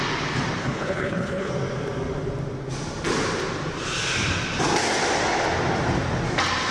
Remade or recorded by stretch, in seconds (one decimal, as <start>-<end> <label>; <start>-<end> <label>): 0.0-0.6 recorded; 0.6-1.5 remade; 1.5-6.7 recorded